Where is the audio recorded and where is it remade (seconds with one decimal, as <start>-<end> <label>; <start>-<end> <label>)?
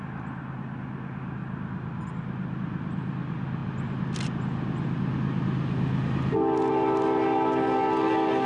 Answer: 0.0-8.5 recorded